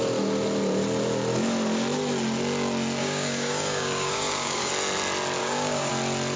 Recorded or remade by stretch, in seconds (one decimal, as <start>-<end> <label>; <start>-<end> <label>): 0.0-3.0 recorded; 3.0-4.7 remade; 4.7-5.4 recorded; 5.4-5.9 remade; 5.9-6.4 recorded